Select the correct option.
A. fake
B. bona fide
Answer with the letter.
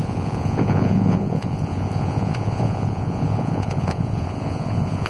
A